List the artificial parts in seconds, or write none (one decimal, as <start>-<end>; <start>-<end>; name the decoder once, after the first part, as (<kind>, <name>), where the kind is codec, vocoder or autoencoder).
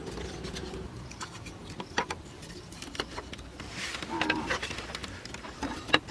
0.0-6.1 (vocoder, BigVGAN v2)